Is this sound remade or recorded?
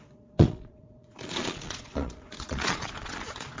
remade